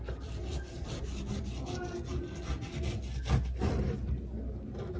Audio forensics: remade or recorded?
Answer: recorded